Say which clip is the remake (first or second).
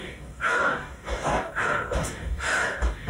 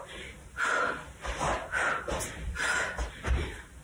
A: first